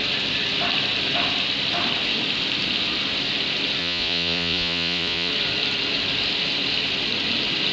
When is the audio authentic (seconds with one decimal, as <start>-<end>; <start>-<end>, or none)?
0.0-3.8; 5.3-7.7